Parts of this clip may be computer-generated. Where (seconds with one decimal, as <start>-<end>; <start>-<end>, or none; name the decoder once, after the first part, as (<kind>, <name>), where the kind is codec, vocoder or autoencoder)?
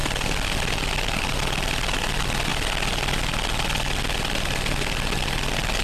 none